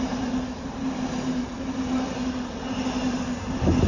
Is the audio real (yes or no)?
yes